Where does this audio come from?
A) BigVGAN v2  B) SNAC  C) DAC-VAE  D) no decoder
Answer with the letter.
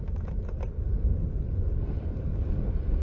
D